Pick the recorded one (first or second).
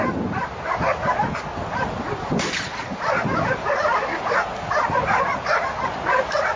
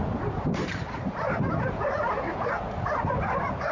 first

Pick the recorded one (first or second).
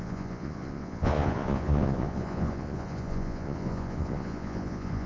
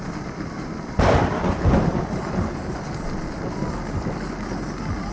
second